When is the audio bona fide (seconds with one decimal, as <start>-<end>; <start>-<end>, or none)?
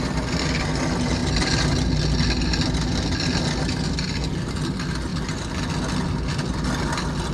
0.0-7.3